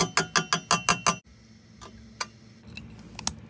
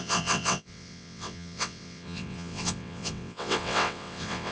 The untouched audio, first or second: first